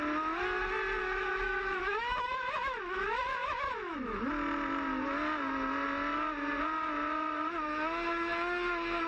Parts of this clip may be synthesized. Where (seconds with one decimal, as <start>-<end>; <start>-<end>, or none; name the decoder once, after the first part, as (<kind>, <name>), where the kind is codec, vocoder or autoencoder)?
1.0-4.3 (autoencoder, DAC-VAE)